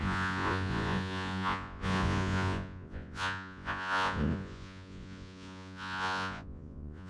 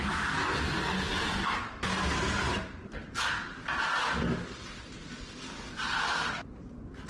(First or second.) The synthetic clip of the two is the first